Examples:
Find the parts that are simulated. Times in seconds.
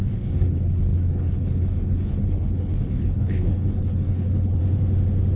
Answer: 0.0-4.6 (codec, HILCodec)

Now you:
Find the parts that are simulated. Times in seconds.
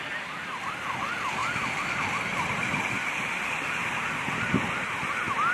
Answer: 1.4-4.7 (vocoder, BigVGAN v2)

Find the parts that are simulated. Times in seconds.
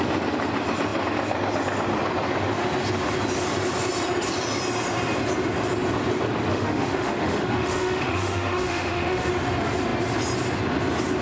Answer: 6.5-9.3 (autoencoder, DAC-VAE)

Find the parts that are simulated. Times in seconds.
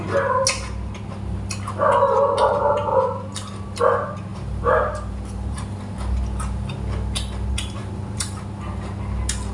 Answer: 4.3-5.8 (vocoder, BigVGAN v2); 7.8-8.4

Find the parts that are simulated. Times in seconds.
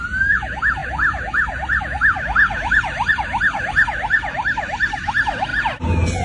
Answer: none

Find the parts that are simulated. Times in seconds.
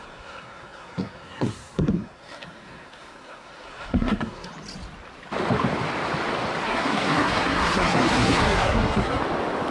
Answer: 0.0-4.5 (codec, SNAC); 6.6-9.2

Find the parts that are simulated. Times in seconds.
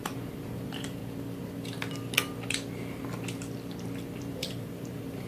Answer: 0.0-1.0 (vocoder, BigVGAN v2); 4.2-5.3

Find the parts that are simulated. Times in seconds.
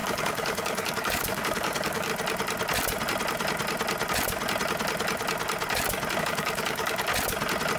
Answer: 0.0-2.1 (codec, DAC); 6.2-7.1